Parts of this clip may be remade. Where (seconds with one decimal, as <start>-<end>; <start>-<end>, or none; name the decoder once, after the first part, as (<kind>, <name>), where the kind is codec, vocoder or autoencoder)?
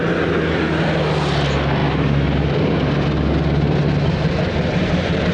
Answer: none